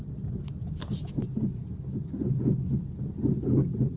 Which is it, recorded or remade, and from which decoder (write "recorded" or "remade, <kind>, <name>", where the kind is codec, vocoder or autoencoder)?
recorded